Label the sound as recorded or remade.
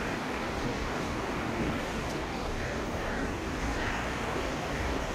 remade